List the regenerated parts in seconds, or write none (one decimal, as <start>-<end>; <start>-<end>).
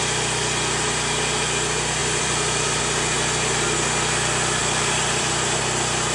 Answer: 2.0-2.8; 4.6-5.6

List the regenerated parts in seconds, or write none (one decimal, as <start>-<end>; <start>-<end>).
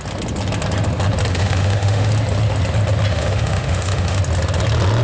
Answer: 1.3-2.1; 3.1-4.2